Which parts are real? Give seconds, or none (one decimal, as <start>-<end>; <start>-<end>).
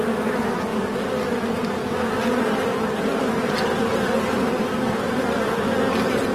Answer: 0.0-6.3